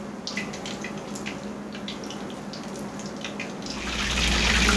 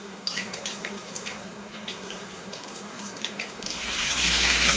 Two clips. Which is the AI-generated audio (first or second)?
second